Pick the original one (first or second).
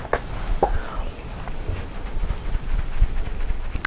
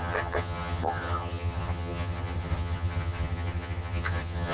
first